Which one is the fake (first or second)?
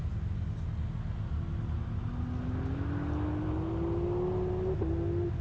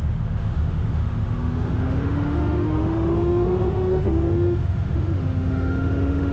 second